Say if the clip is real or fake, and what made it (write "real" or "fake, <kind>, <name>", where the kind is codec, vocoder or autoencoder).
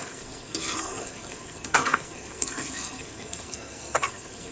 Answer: fake, codec, SNAC